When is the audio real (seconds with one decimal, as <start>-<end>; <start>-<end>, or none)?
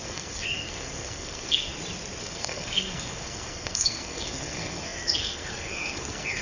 1.7-2.2